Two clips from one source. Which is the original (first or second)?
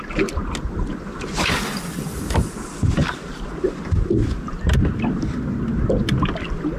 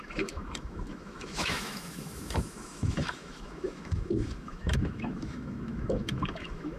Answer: first